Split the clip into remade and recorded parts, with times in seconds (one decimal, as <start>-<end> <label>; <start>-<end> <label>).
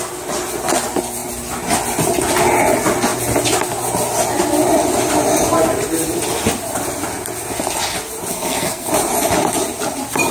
0.0-8.3 recorded; 8.3-8.9 remade; 8.9-10.3 recorded